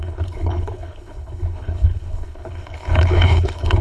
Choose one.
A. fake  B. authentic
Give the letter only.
A